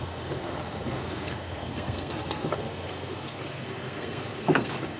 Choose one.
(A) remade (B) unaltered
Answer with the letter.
A